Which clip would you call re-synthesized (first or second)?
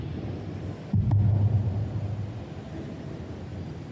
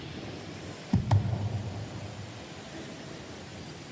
second